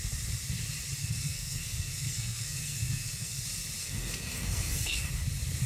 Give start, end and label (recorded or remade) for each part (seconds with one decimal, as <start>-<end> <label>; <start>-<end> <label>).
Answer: 0.0-1.0 recorded; 1.0-3.4 remade; 3.4-3.8 recorded; 3.8-5.1 remade; 5.1-5.7 recorded